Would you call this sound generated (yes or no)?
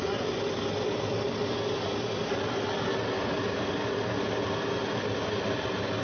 no